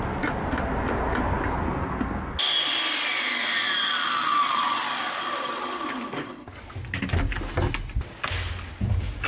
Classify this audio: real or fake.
real